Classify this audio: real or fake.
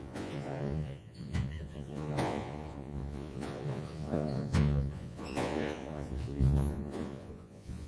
fake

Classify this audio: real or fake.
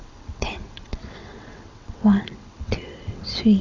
fake